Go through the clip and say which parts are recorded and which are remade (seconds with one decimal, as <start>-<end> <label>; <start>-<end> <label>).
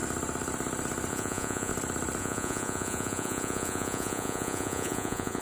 0.0-1.1 recorded; 1.1-1.7 remade; 1.7-2.2 recorded; 2.2-5.4 remade